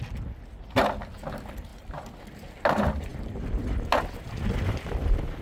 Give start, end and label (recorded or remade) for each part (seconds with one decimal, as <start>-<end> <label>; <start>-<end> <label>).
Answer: 0.0-5.4 recorded